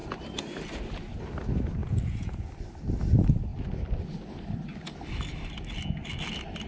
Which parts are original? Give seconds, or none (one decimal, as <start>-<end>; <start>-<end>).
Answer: 0.0-1.8; 2.5-6.7